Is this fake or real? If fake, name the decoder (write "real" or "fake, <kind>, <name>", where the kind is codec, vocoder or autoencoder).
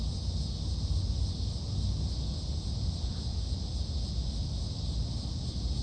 real